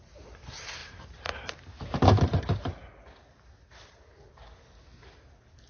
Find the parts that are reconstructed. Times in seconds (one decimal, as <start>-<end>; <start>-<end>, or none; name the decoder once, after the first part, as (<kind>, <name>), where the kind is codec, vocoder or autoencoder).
0.8-2.7 (vocoder, BigVGAN v2)